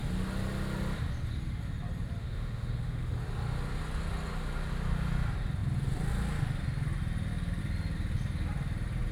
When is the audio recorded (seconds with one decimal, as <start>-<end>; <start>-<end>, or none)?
0.0-2.2; 3.1-9.1